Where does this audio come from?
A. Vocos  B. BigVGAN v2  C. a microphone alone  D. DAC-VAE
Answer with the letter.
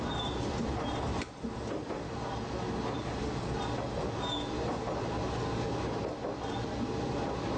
C